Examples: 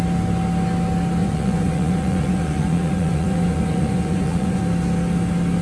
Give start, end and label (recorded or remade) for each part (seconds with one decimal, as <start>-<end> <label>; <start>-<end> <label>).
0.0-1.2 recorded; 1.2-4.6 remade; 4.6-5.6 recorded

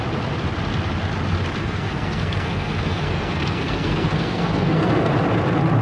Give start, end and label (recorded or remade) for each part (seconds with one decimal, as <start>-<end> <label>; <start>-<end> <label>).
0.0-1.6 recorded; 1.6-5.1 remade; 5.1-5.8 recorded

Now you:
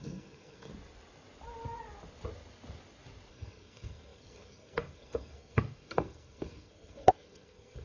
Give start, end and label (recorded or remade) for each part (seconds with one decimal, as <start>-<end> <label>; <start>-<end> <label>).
0.0-0.7 remade; 0.7-3.3 recorded; 3.3-7.8 remade